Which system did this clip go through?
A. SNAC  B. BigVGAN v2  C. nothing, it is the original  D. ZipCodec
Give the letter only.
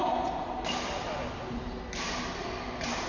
C